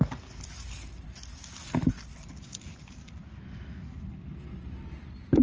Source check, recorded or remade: recorded